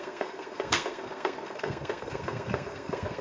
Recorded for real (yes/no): no